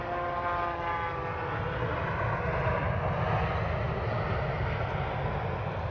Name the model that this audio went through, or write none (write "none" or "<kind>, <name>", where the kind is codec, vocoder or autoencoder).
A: none